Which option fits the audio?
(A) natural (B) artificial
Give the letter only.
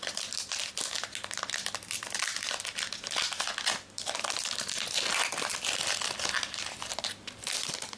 A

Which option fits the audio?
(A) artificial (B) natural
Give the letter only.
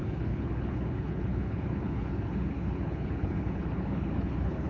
A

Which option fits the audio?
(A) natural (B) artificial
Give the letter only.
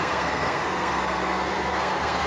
B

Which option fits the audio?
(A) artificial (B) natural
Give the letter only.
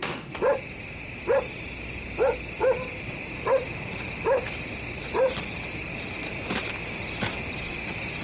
A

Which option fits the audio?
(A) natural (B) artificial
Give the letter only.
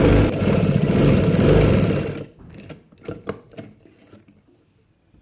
A